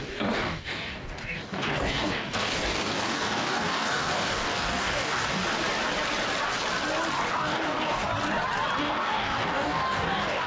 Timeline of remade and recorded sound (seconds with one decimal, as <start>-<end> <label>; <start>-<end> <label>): 0.0-5.4 remade; 5.4-7.3 recorded; 7.3-8.1 remade; 8.1-8.8 recorded; 8.8-10.5 remade